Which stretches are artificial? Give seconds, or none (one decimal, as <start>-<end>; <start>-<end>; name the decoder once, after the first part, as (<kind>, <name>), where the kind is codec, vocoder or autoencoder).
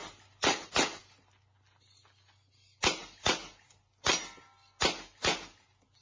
none